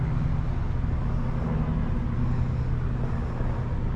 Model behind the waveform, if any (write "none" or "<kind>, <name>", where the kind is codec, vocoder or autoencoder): none